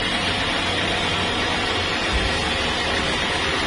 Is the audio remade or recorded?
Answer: recorded